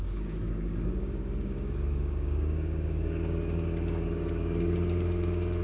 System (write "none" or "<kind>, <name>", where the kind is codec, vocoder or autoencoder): codec, DAC